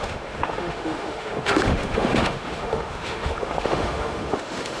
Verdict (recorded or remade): remade